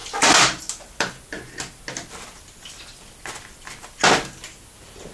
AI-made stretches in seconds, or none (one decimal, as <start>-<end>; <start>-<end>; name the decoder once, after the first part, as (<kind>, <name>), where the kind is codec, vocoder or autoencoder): none